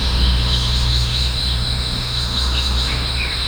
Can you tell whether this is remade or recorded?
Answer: remade